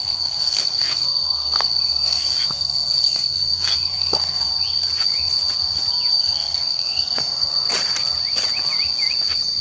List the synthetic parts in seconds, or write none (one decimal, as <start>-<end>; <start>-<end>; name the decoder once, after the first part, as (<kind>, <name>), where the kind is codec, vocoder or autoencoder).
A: 0.0-4.5 (codec, SNAC); 6.1-7.5